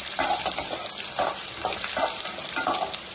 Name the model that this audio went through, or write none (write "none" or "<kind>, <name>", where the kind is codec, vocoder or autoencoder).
vocoder, BigVGAN v2